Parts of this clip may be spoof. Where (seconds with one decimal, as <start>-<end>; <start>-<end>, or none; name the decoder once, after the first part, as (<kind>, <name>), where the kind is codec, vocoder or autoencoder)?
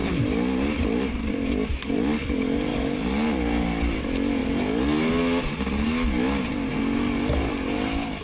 none